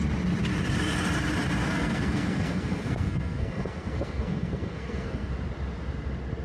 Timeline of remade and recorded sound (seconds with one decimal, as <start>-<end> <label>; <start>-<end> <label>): 0.0-1.6 recorded; 1.6-5.3 remade; 5.3-6.4 recorded